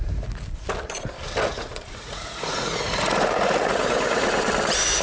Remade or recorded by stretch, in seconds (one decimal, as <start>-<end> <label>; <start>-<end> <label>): 0.0-1.5 recorded; 1.5-4.5 remade; 4.5-5.0 recorded